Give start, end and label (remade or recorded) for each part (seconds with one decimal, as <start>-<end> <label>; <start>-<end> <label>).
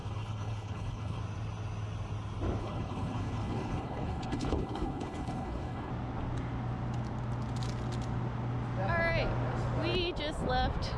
0.0-1.2 remade; 1.2-2.6 recorded; 2.6-5.9 remade; 5.9-11.0 recorded